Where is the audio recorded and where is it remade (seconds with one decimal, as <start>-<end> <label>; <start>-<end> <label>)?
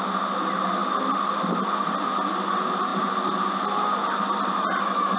0.0-5.2 recorded